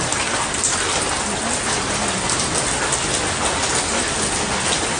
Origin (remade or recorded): recorded